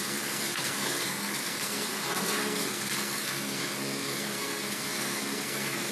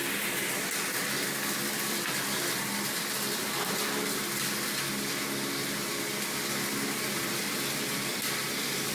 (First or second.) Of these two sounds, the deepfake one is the first